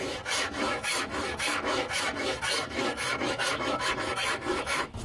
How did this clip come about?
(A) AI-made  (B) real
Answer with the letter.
A